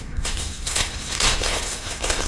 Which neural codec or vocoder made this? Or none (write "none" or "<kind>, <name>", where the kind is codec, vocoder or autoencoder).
codec, SNAC